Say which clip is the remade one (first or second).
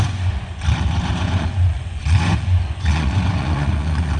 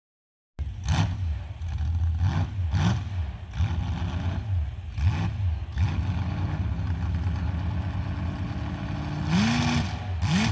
first